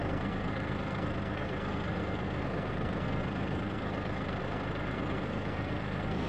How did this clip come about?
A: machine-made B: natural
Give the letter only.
A